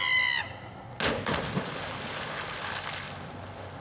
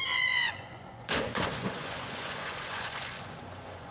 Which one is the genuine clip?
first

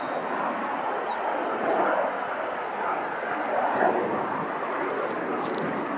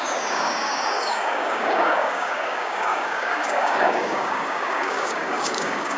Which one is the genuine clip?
first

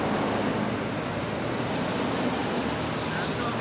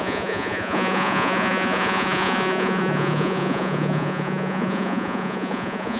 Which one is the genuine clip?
first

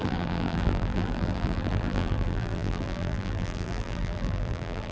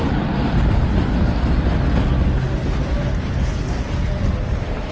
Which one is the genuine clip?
second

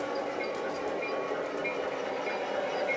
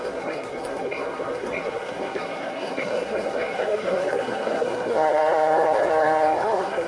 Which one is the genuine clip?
first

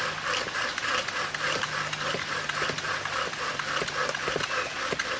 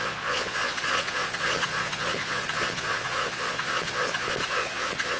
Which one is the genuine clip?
first